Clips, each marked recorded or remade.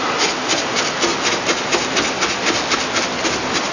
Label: recorded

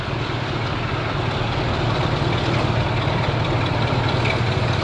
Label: recorded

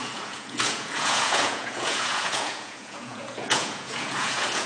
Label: remade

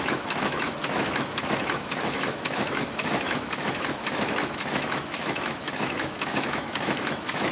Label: remade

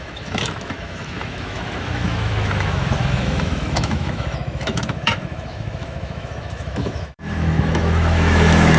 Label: remade